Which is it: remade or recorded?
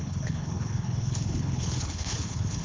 remade